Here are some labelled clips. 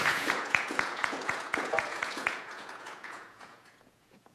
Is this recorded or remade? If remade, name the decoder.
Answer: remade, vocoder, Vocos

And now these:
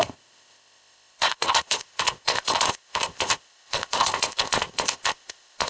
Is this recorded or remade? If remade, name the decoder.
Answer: remade, codec, ZipCodec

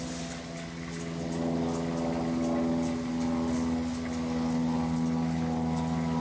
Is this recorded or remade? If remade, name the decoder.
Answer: recorded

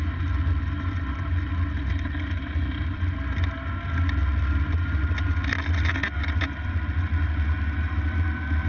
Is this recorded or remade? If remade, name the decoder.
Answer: recorded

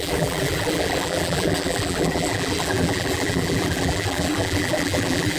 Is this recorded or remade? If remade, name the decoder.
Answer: remade, vocoder, BigVGAN v2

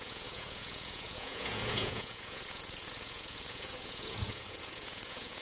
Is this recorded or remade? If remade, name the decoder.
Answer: remade, vocoder, Vocos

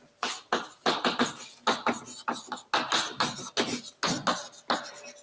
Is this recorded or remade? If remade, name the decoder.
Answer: recorded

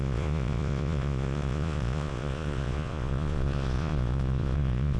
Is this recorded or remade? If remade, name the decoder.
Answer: remade, vocoder, Vocos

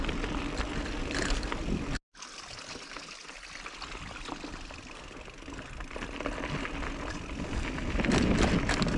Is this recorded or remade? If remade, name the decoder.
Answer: recorded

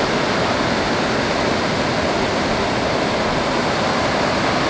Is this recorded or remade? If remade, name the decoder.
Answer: recorded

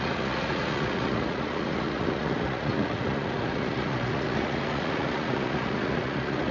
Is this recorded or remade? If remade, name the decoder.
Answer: remade, vocoder, Vocos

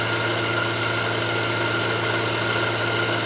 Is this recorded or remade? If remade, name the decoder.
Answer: recorded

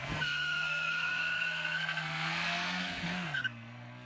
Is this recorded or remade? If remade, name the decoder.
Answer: remade, codec, SNAC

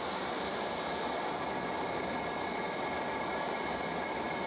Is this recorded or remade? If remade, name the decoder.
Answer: recorded